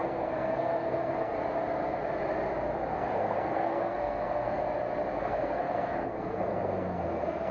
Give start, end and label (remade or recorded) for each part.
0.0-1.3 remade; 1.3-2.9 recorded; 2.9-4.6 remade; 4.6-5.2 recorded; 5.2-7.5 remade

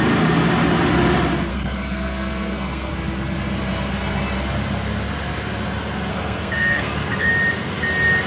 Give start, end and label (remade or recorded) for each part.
0.0-1.5 recorded; 1.5-2.9 remade; 2.9-6.1 recorded; 6.1-7.3 remade; 7.3-8.3 recorded

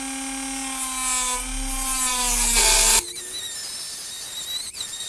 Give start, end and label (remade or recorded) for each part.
0.0-5.1 recorded

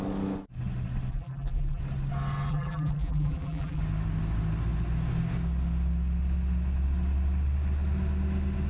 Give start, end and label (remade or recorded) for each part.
0.0-1.1 recorded; 1.1-1.8 remade; 1.8-2.5 recorded; 2.5-3.8 remade; 3.8-8.7 recorded

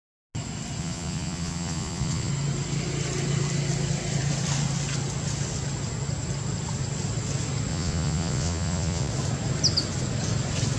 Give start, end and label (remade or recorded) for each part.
0.0-0.8 recorded; 0.8-2.3 remade; 2.3-7.7 recorded; 7.7-9.1 remade; 9.1-10.8 recorded